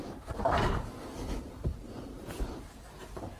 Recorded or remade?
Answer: remade